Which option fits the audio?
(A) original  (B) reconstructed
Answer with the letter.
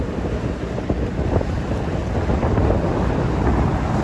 A